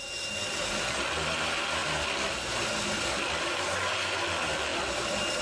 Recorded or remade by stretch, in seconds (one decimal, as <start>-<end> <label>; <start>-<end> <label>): 0.0-5.4 recorded